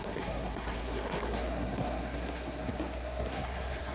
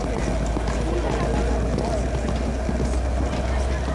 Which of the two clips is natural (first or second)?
second